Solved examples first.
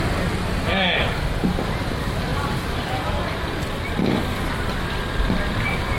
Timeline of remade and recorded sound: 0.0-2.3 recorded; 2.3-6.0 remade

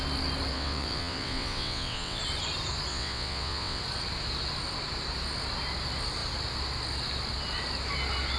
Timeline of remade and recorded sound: 0.0-0.5 recorded; 0.5-2.2 remade; 2.2-2.9 recorded; 2.9-3.8 remade; 3.8-8.4 recorded

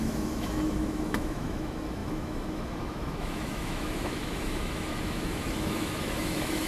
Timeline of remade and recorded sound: 0.0-6.7 remade

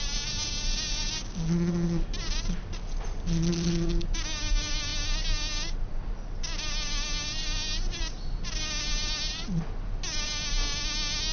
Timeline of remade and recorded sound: 0.0-11.3 recorded

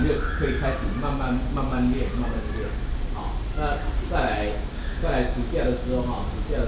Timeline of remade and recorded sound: 0.0-1.7 recorded; 1.7-2.5 remade; 2.5-4.3 recorded; 4.3-5.5 remade; 5.5-6.7 recorded

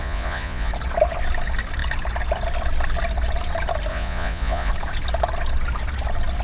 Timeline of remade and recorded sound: 0.0-0.7 remade; 0.7-3.9 recorded; 3.9-4.7 remade; 4.7-6.4 recorded